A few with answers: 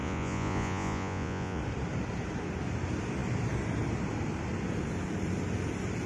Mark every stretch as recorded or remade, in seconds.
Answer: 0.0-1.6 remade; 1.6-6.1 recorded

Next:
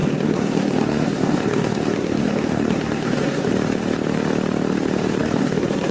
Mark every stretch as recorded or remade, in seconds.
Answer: 0.0-3.5 remade; 3.5-5.2 recorded; 5.2-5.9 remade

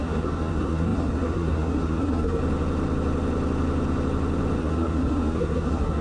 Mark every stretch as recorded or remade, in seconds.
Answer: 0.0-2.4 remade; 2.4-4.6 recorded; 4.6-6.0 remade

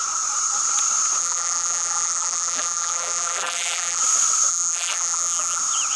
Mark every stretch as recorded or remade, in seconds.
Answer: 0.0-1.2 recorded; 1.2-4.0 remade; 4.0-4.5 recorded; 4.5-5.6 remade; 5.6-6.0 recorded

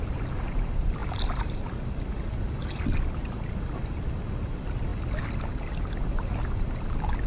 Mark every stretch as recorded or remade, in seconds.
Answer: 0.0-7.3 recorded

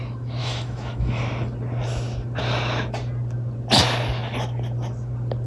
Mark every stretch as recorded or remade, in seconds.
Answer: 0.0-0.4 recorded; 0.4-1.2 remade; 1.2-5.5 recorded